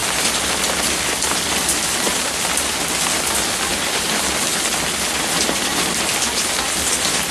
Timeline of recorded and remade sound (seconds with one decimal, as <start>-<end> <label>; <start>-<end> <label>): 0.0-7.3 recorded